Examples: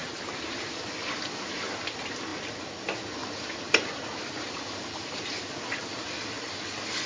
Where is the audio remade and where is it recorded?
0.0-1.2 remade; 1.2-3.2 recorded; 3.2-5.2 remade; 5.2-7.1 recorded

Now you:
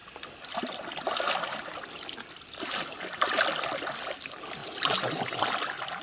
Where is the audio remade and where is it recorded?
0.0-6.0 recorded